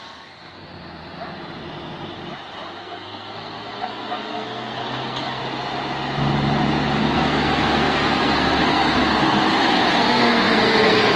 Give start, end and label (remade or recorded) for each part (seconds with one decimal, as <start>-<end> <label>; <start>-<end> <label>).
0.0-0.7 remade; 0.7-2.8 recorded; 2.8-5.4 remade; 5.4-7.0 recorded; 7.0-11.2 remade